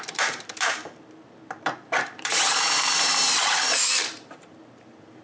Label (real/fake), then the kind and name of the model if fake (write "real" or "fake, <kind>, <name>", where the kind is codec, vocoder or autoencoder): fake, vocoder, BigVGAN v2